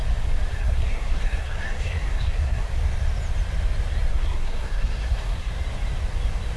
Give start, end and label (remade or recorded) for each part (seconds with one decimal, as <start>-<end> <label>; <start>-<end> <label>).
0.0-0.5 recorded; 0.5-2.7 remade; 2.7-4.1 recorded; 4.1-5.5 remade; 5.5-6.6 recorded